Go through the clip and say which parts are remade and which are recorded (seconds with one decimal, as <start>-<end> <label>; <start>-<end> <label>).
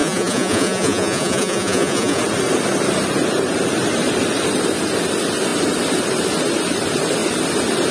0.0-2.2 remade; 2.2-7.9 recorded